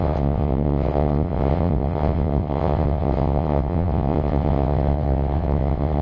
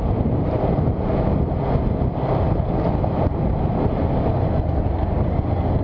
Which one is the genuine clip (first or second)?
second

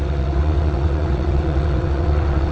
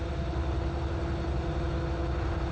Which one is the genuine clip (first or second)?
second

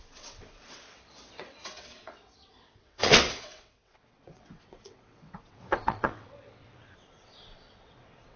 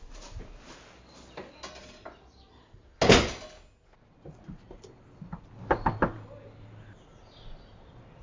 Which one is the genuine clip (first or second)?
second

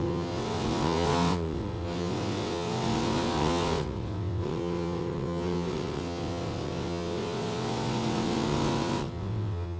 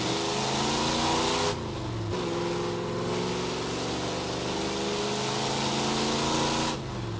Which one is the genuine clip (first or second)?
second